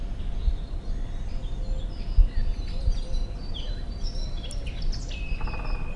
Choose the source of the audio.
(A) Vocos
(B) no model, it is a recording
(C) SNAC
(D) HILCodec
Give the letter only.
B